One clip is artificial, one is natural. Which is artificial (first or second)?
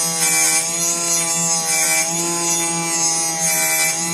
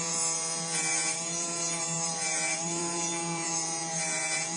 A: second